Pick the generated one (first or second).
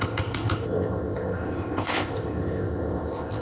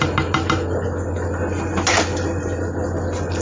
first